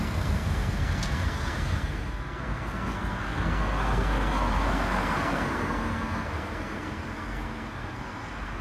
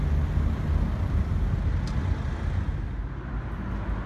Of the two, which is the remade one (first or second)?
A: first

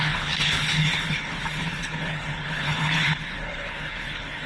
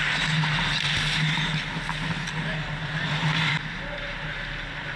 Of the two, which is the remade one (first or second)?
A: first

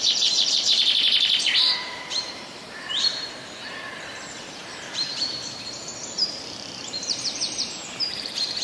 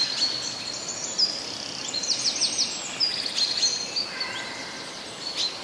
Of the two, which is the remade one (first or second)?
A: first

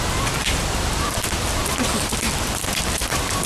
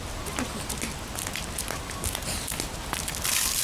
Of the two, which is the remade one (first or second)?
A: first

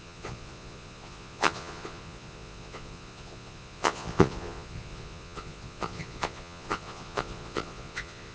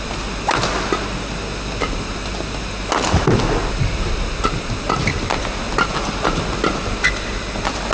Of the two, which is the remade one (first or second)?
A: first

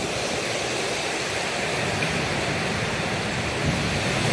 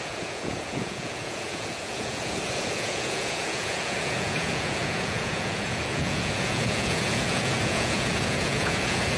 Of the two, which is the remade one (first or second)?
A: second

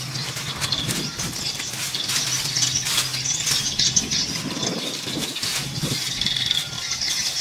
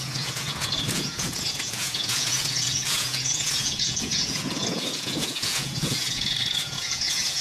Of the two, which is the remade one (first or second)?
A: second